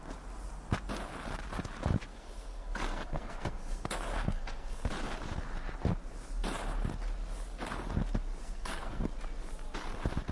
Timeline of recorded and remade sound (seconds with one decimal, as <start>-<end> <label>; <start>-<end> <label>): 0.0-2.1 recorded; 2.1-4.9 remade; 4.9-8.4 recorded; 8.4-9.1 remade; 9.1-10.3 recorded